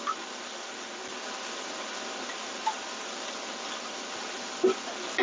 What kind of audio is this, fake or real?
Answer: real